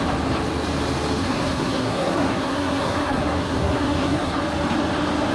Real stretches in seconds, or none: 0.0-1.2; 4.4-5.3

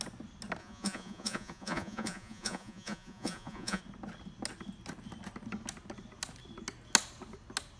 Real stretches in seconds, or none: 0.0-0.6; 3.8-7.8